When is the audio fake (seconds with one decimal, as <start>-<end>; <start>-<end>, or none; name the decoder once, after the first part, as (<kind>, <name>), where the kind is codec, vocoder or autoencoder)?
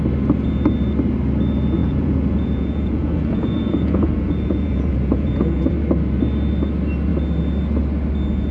1.8-5.7 (vocoder, Vocos)